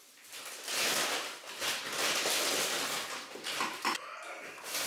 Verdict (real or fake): real